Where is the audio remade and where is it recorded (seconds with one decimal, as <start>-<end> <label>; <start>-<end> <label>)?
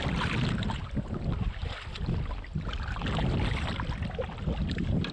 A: 0.0-5.1 recorded